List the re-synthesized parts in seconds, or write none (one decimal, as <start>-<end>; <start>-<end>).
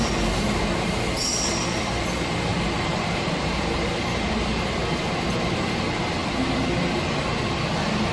2.5-4.3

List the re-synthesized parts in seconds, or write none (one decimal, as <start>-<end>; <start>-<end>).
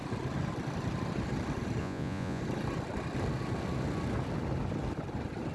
1.8-2.4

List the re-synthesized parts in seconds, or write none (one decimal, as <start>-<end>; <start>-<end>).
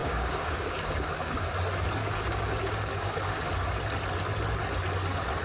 0.0-1.5; 2.0-3.5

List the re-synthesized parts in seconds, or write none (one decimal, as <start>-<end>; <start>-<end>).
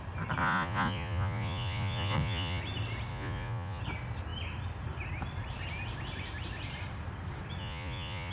0.4-2.6; 3.1-3.8; 7.6-8.3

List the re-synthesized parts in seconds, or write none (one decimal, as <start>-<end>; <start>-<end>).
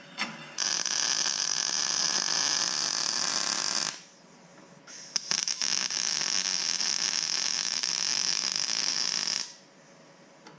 5.4-6.2; 7.6-8.9